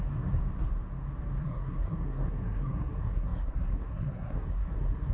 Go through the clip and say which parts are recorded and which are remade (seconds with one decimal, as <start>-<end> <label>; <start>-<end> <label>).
0.0-0.4 remade; 0.4-1.4 recorded; 1.4-5.1 remade

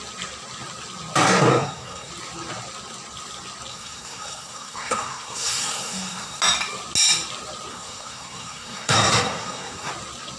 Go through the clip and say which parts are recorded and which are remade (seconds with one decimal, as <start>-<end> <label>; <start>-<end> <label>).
0.0-1.5 recorded; 1.5-2.1 remade; 2.1-3.7 recorded; 3.7-6.4 remade; 6.4-7.7 recorded; 7.7-9.9 remade; 9.9-10.4 recorded

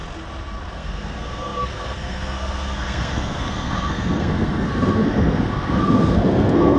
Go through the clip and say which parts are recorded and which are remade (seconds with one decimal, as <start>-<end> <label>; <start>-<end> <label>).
0.0-0.7 recorded; 0.7-6.8 remade

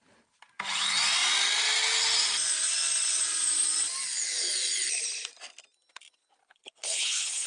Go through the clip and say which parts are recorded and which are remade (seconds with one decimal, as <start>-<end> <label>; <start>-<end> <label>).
0.0-6.4 recorded; 6.4-7.5 remade

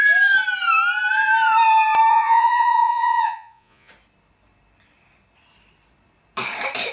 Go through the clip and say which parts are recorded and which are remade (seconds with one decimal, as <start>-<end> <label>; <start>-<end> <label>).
0.0-2.1 recorded; 2.1-3.9 remade; 3.9-6.9 recorded

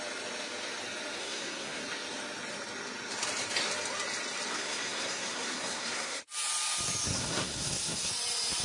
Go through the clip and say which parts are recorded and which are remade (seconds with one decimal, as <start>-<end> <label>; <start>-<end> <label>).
0.0-1.2 recorded; 1.2-1.8 remade; 1.8-4.5 recorded; 4.5-6.2 remade; 6.2-7.1 recorded; 7.1-8.1 remade; 8.1-8.6 recorded

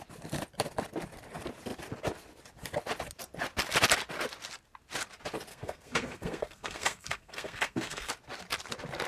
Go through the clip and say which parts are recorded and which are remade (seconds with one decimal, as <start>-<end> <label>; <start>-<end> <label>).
0.0-5.5 recorded; 5.5-8.1 remade; 8.1-9.1 recorded

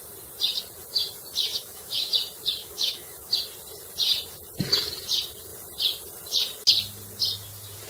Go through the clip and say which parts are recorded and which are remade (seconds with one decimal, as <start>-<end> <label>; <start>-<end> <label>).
0.0-1.5 recorded; 1.5-2.1 remade; 2.1-2.6 recorded; 2.6-3.3 remade; 3.3-7.9 recorded